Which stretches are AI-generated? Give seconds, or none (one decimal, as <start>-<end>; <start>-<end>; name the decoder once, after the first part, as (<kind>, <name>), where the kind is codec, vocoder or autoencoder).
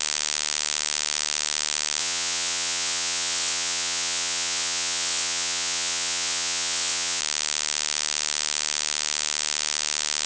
2.0-7.2 (vocoder, WaveNeXt)